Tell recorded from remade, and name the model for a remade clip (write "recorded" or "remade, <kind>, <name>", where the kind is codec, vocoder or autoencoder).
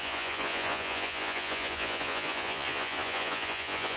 remade, vocoder, Vocos